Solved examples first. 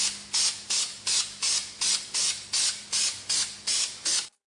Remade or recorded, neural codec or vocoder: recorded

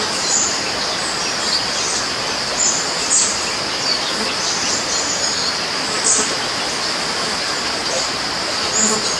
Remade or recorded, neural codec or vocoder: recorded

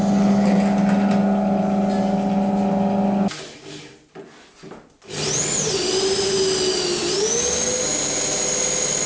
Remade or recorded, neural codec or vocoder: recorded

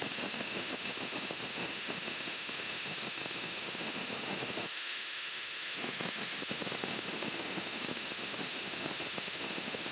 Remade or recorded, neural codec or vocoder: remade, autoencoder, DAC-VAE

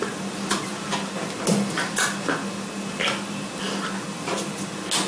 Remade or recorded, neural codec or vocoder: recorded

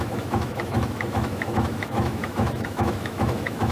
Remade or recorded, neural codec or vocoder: remade, autoencoder, DAC-VAE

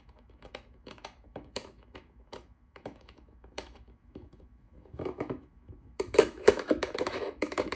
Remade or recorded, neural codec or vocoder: remade, autoencoder, DAC-VAE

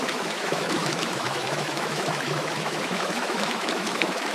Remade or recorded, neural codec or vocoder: remade, autoencoder, DAC-VAE